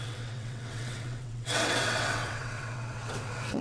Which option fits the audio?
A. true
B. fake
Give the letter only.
B